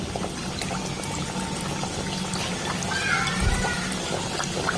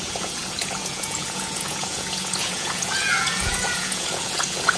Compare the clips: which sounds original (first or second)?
first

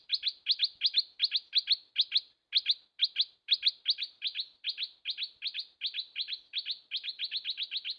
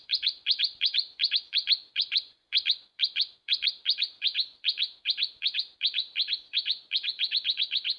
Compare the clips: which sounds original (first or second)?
first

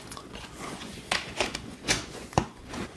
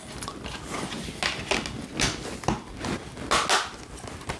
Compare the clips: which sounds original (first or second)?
second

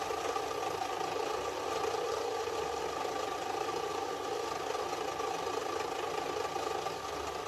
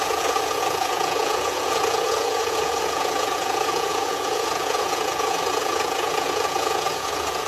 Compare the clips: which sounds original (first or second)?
first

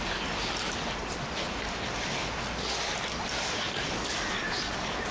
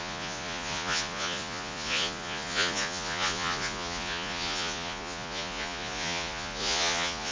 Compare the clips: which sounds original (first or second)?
first